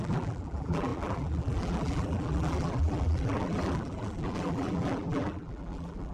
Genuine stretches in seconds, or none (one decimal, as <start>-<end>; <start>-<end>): none